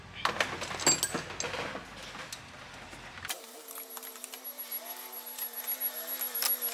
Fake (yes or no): no